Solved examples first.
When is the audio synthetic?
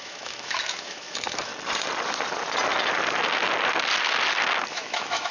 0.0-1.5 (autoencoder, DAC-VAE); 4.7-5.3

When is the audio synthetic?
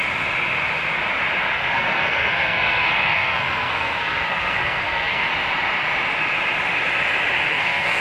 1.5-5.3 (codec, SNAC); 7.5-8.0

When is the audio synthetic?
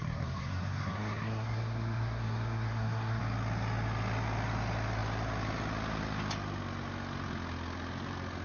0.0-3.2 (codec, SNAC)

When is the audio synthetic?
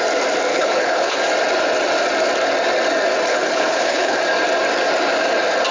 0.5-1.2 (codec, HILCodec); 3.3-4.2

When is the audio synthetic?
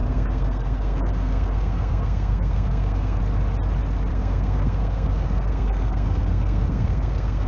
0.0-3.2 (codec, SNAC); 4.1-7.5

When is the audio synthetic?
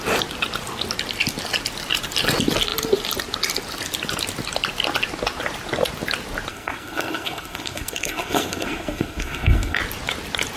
6.5-9.8 (codec, SNAC)